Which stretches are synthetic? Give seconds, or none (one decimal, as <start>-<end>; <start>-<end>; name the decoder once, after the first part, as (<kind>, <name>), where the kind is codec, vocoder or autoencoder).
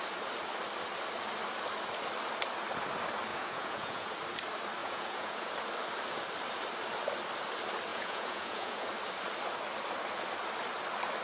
3.3-4.1 (vocoder, Vocos); 4.8-5.5; 7.9-8.9